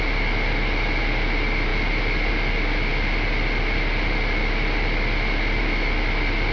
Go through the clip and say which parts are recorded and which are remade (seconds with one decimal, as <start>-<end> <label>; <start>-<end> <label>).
0.0-6.5 recorded